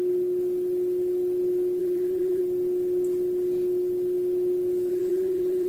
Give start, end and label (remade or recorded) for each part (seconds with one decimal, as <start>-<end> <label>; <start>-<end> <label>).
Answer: 0.0-1.8 recorded; 1.8-2.4 remade; 2.4-4.9 recorded; 4.9-5.7 remade